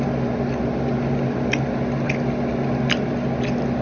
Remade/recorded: recorded